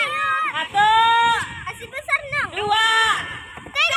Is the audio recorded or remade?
recorded